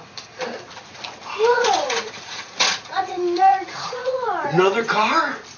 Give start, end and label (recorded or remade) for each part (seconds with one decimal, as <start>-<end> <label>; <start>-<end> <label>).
0.0-1.5 recorded; 1.5-4.9 remade; 4.9-5.6 recorded